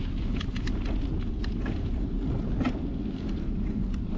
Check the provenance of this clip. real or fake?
real